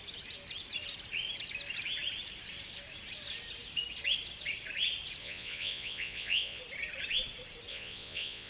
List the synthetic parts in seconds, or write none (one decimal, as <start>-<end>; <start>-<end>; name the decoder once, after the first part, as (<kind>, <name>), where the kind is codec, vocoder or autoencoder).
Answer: 5.2-6.6 (vocoder, Vocos); 7.7-8.5